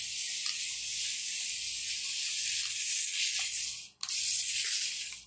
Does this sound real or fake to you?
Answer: real